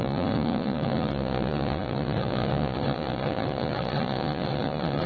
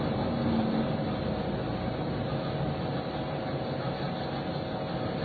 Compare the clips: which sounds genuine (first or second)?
second